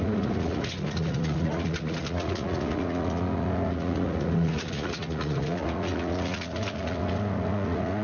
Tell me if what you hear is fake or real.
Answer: fake